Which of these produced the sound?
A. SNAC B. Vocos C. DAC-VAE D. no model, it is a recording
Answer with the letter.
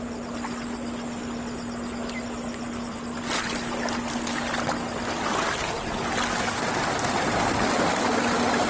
D